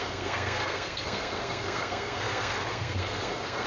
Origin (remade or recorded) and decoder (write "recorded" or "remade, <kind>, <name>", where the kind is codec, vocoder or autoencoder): remade, codec, SNAC